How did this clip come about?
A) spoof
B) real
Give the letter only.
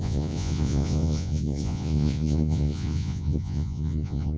A